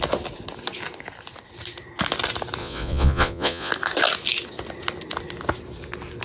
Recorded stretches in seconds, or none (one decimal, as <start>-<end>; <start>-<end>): 0.0-2.6; 3.7-6.2